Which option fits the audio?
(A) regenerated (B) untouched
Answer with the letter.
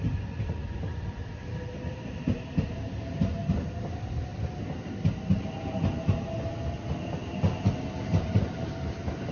B